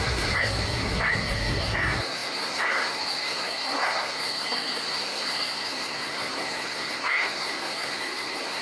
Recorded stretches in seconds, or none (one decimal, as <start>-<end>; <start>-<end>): none